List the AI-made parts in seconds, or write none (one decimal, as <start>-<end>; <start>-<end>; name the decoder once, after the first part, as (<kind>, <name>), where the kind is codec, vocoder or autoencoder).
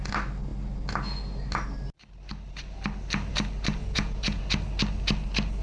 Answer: 3.8-4.4 (vocoder, Vocos)